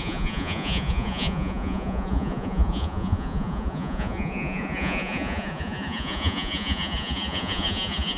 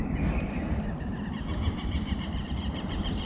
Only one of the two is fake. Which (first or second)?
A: first